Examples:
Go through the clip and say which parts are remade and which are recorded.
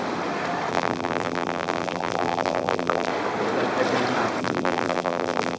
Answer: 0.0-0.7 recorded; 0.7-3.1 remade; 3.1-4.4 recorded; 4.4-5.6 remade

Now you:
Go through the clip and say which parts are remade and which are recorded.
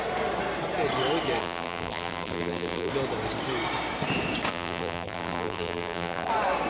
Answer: 0.0-1.4 recorded; 1.4-2.9 remade; 2.9-4.5 recorded; 4.5-6.3 remade; 6.3-6.7 recorded